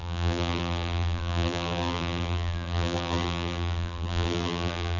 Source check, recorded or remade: remade